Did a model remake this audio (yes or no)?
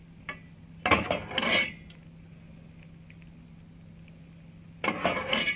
no